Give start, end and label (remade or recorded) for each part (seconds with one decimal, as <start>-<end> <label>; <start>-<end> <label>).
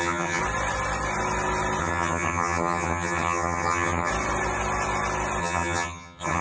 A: 0.0-0.4 remade; 0.4-1.8 recorded; 1.8-4.1 remade; 4.1-5.4 recorded; 5.4-6.4 remade